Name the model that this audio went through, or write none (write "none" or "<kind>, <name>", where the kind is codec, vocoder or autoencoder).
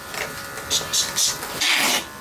none